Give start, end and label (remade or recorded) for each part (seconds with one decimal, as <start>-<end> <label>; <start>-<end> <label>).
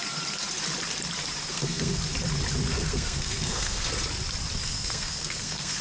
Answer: 0.0-1.5 recorded; 1.5-2.0 remade; 2.0-2.7 recorded; 2.7-3.9 remade; 3.9-4.6 recorded; 4.6-5.8 remade